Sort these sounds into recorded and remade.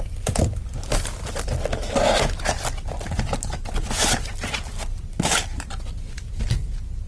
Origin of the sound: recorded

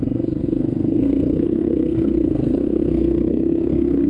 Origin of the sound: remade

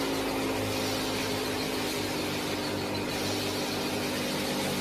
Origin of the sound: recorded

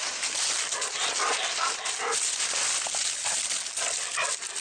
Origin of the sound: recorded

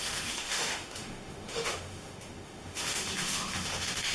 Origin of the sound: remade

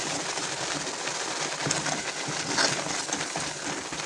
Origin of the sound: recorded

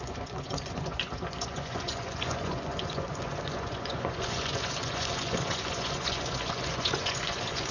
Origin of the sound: remade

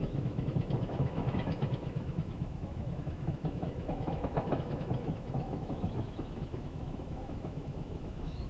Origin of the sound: remade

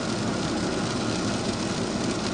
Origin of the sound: recorded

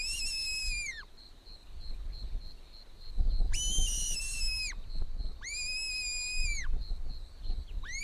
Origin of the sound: recorded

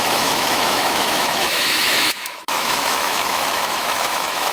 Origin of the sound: remade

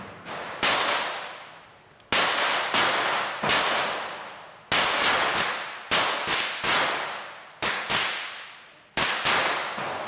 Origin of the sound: recorded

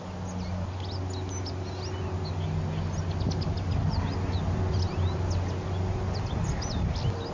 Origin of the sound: recorded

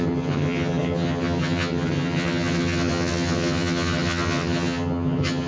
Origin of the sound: remade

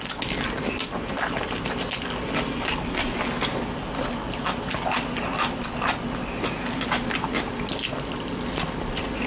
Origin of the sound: recorded